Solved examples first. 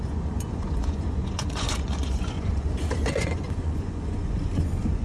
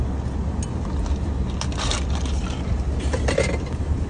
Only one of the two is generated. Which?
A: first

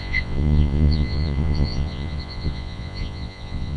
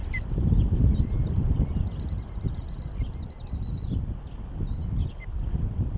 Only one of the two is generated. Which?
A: first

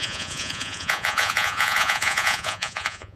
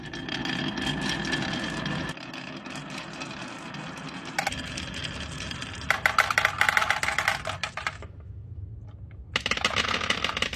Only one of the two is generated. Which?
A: first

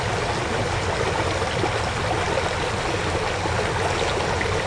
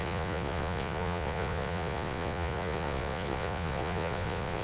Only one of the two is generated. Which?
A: second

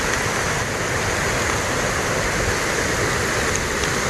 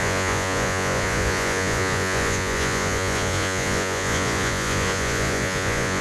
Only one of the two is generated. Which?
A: second